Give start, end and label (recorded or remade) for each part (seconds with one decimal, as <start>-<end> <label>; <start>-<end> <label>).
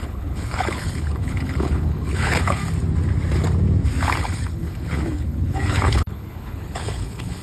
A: 0.0-2.6 remade; 2.6-4.2 recorded; 4.2-7.4 remade